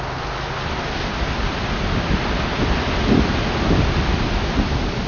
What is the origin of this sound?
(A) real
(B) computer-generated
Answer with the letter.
A